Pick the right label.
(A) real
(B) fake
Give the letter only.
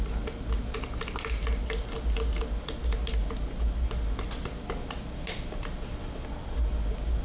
A